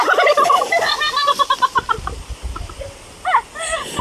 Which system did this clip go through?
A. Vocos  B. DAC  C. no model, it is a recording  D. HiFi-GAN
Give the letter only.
C